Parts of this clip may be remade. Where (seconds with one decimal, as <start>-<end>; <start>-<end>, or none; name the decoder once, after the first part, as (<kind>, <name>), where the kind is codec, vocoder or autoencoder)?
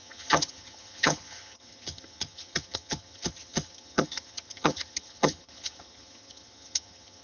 0.0-7.2 (vocoder, HiFi-GAN)